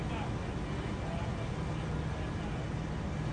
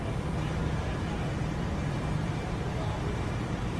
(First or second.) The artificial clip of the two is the second